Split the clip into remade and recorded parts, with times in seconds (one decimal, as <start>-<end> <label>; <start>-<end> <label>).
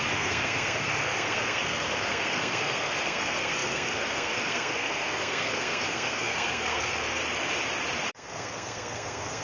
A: 0.0-7.2 remade; 7.2-8.1 recorded; 8.1-9.4 remade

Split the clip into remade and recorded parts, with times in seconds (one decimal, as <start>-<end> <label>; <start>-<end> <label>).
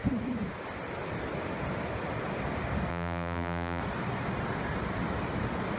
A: 0.0-2.9 recorded; 2.9-3.8 remade; 3.8-5.8 recorded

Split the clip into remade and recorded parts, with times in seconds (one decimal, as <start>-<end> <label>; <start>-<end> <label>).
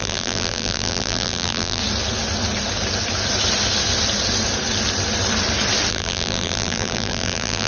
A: 0.0-1.8 remade; 1.8-5.9 recorded; 5.9-7.7 remade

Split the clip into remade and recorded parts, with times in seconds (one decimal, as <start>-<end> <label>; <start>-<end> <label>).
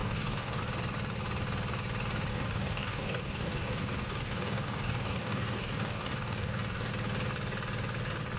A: 0.0-0.6 remade; 0.6-2.3 recorded; 2.3-6.9 remade; 6.9-8.4 recorded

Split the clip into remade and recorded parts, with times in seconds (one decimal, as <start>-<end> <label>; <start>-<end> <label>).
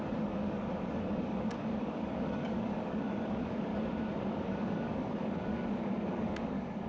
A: 0.0-3.7 remade; 3.7-4.3 recorded; 4.3-6.9 remade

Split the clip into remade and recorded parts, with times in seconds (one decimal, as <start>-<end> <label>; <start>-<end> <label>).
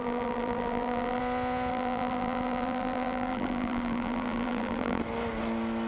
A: 0.0-1.2 remade; 1.2-1.7 recorded; 1.7-5.0 remade; 5.0-5.9 recorded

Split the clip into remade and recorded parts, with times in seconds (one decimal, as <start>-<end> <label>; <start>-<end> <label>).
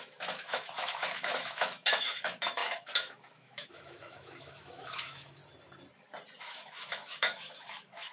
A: 0.0-5.4 remade; 5.4-6.4 recorded; 6.4-8.1 remade